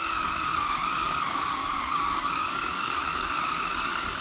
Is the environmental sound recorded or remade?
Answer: remade